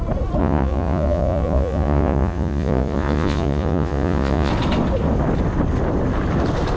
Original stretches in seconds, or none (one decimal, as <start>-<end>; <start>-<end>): 0.0-0.4; 4.5-6.8